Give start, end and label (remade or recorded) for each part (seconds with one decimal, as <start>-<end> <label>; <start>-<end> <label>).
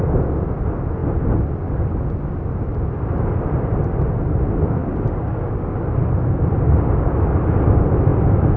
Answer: 0.0-4.8 recorded; 4.8-5.7 remade; 5.7-8.6 recorded